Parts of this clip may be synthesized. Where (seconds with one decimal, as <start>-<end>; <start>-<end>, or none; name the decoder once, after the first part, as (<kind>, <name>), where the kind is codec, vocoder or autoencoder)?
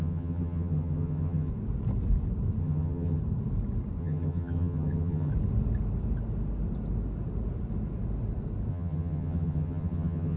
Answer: 0.0-1.5 (vocoder, HiFi-GAN); 2.6-3.2; 4.0-5.3; 8.7-10.4